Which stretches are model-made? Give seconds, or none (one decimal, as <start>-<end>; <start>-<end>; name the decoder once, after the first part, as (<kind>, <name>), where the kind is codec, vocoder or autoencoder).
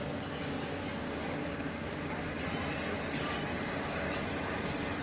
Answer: 0.0-2.1 (codec, DAC); 3.5-4.1